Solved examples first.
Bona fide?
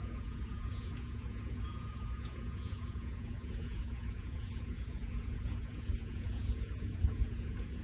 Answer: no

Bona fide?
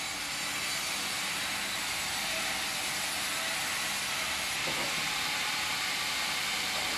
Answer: yes